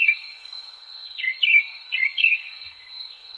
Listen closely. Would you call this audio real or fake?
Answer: fake